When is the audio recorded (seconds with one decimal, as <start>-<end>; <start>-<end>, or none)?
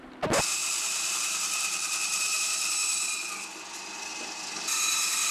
0.0-0.6; 2.7-5.3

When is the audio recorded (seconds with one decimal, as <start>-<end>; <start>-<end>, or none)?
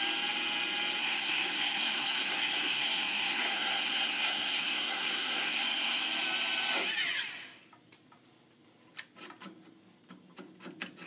0.0-1.0; 6.0-11.1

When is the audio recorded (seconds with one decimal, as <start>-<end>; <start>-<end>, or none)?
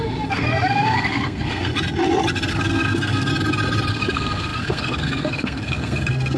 1.7-2.5; 3.3-3.9